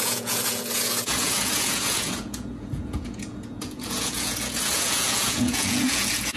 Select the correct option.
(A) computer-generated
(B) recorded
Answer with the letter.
A